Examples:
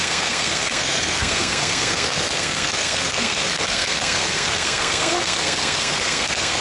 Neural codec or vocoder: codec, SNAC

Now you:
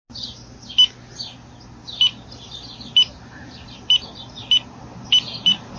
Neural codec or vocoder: none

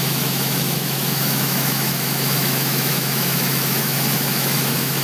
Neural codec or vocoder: autoencoder, DAC-VAE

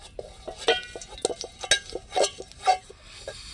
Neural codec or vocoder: none